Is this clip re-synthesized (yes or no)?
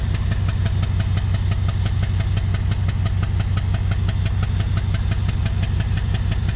no